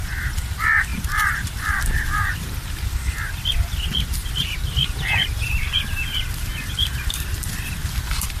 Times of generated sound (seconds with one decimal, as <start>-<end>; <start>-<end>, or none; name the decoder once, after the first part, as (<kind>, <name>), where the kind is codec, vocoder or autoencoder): 0.9-2.5 (vocoder, BigVGAN v2); 4.2-6.0